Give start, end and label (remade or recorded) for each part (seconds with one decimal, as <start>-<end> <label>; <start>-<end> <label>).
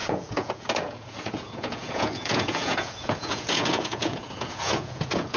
0.0-5.4 remade